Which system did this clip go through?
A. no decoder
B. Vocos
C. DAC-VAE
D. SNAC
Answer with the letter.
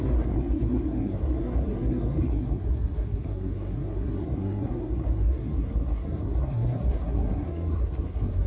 D